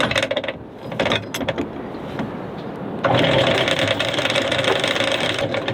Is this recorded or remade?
recorded